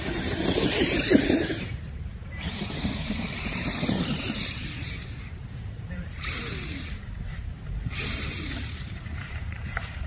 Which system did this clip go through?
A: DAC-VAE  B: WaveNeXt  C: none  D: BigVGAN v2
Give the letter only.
D